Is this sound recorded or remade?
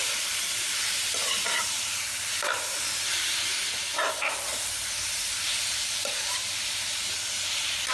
remade